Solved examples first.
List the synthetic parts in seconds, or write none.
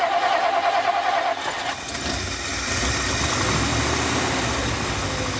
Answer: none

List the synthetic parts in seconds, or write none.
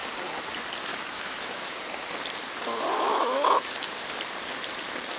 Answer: 0.9-1.8 (autoencoder, DAC-VAE); 3.1-3.9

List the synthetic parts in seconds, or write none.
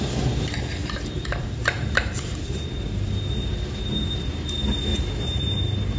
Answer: 0.8-3.2 (vocoder, BigVGAN v2); 4.9-6.0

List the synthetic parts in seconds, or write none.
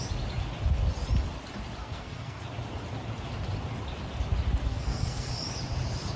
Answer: 1.8-2.4 (codec, SNAC); 4.6-5.3